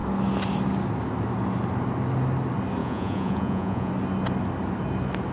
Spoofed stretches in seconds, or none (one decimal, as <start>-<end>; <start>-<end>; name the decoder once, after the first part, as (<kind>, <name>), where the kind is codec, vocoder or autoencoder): 2.8-3.9 (vocoder, Vocos)